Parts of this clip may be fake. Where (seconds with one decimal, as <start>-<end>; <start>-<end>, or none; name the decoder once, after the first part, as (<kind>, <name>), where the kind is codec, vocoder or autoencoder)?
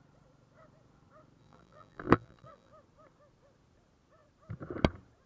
1.4-2.7 (vocoder, BigVGAN v2)